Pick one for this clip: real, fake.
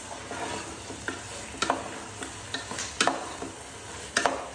real